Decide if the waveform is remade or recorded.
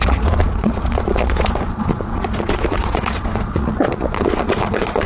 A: remade